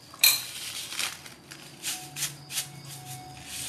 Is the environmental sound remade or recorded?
recorded